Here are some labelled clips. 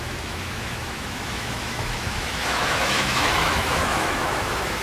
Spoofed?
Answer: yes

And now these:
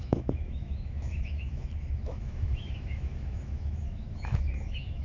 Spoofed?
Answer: yes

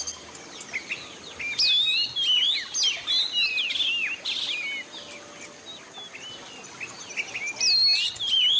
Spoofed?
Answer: no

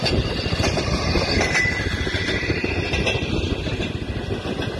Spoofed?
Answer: no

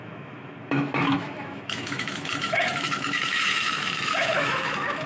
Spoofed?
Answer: yes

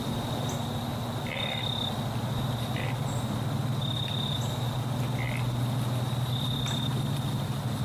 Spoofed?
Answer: no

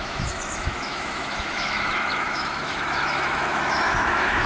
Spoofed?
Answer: yes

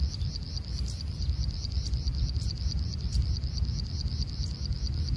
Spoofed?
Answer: no